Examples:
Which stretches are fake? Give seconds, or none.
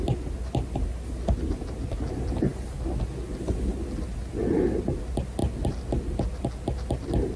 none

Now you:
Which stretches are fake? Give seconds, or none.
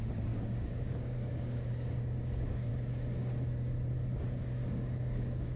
0.0-2.7 (codec, DAC); 4.2-5.6